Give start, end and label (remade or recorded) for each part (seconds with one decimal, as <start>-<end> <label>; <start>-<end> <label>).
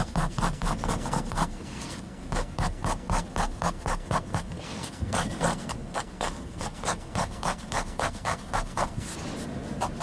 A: 0.0-9.1 remade; 9.1-10.0 recorded